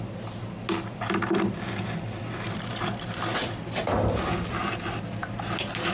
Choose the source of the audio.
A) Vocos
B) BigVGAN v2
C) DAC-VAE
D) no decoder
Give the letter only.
D